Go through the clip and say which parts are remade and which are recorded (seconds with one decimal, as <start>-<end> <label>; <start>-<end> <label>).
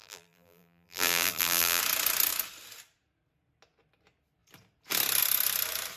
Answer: 0.0-1.8 remade; 1.8-6.0 recorded